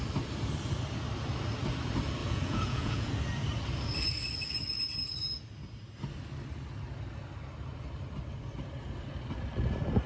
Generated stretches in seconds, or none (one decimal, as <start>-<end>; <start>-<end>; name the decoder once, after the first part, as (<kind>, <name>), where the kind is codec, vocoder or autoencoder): 2.2-3.1 (vocoder, Vocos)